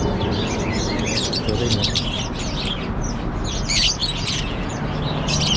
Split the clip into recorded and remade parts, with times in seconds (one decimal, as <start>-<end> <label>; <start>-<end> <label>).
0.0-4.0 recorded; 4.0-4.7 remade; 4.7-5.6 recorded